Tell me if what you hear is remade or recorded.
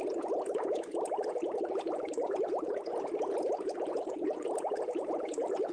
remade